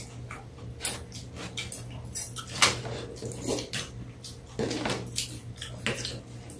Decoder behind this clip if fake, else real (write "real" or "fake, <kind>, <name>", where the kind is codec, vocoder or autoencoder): real